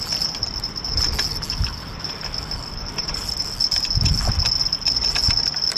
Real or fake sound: real